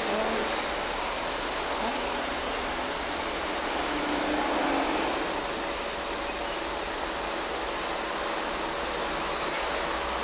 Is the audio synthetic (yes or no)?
no